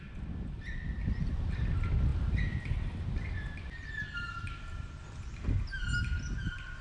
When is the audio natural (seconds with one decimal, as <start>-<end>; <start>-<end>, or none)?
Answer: 0.0-6.8